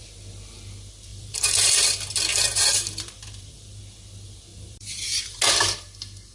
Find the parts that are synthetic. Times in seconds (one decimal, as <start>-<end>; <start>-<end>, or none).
1.1-1.7; 2.3-3.8; 4.5-5.4

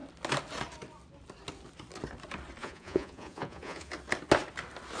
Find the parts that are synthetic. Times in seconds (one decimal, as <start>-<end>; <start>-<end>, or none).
2.6-3.9

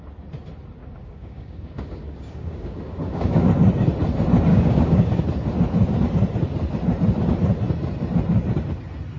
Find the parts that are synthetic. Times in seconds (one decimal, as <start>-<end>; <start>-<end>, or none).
0.8-3.5; 4.5-5.2

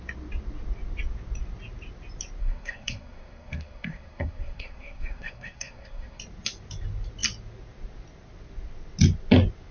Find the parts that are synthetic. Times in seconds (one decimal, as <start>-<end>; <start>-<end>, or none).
2.4-6.2